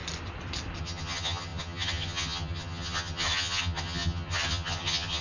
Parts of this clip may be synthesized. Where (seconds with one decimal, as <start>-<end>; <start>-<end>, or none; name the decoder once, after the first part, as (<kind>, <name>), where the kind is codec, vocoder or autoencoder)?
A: 0.8-5.2 (vocoder, HiFi-GAN)